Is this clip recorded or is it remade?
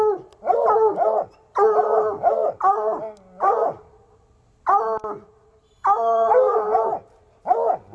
recorded